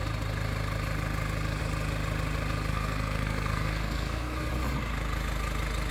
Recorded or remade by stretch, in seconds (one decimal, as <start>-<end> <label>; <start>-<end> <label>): 0.0-2.7 recorded; 2.7-4.5 remade; 4.5-5.9 recorded